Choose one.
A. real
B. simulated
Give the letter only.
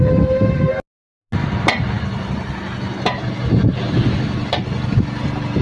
A